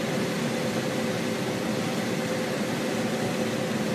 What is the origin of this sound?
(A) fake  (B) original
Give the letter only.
B